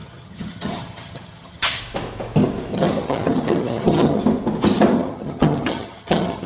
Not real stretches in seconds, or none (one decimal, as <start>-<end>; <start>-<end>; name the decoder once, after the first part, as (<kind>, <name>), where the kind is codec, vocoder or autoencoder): 0.0-1.8 (vocoder, HiFi-GAN); 2.7-4.2; 4.9-6.5